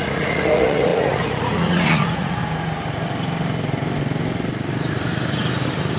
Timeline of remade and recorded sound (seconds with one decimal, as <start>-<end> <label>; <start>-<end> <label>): 0.0-2.4 remade; 2.4-6.0 recorded